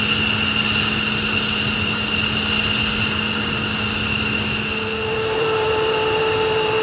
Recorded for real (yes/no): yes